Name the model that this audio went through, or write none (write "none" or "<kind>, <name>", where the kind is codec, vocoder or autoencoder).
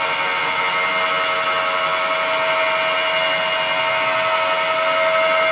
none